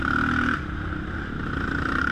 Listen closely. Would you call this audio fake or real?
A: real